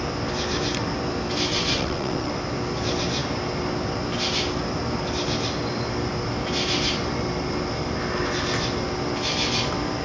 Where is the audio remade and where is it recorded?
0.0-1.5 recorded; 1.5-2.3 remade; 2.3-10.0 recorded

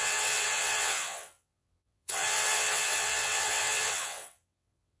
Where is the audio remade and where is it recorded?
0.0-5.0 remade